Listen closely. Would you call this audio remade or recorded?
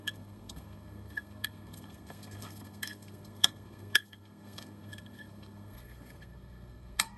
remade